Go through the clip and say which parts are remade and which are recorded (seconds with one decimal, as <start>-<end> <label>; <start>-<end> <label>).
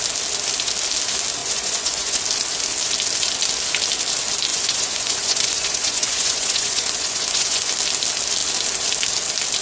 0.0-1.4 recorded; 1.4-2.2 remade; 2.2-4.5 recorded; 4.5-7.7 remade; 7.7-9.6 recorded